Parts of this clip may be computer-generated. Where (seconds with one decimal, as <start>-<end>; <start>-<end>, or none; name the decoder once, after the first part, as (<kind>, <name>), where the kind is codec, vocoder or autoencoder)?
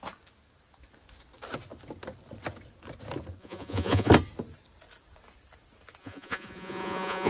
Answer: 3.4-4.1 (vocoder, Vocos); 6.0-7.3